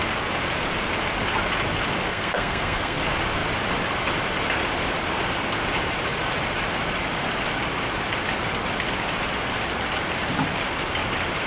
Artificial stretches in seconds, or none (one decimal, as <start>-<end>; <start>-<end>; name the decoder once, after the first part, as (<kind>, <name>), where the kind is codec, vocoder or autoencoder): 2.1-3.0 (codec, SNAC)